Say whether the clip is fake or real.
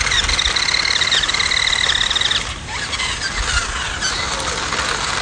real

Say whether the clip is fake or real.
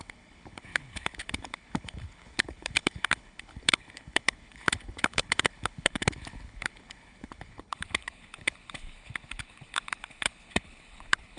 fake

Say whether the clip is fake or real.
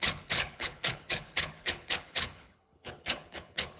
fake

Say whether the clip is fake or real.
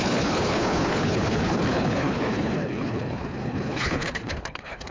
fake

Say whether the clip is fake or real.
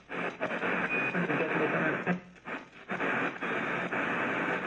real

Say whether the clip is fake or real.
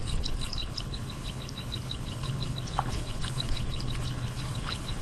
fake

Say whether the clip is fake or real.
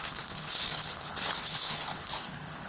fake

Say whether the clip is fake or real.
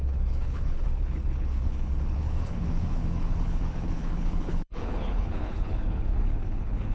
fake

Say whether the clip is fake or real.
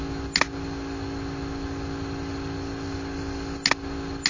real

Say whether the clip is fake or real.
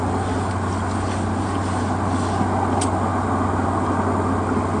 real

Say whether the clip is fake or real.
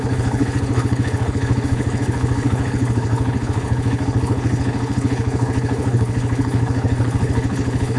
fake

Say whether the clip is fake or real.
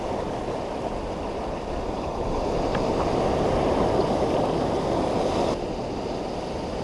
real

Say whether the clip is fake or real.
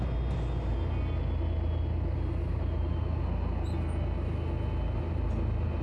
real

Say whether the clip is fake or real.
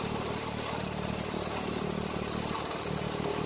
real